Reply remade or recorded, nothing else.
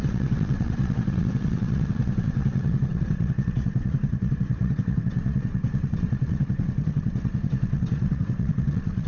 remade